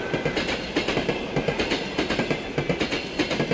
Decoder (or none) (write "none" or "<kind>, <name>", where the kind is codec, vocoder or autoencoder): none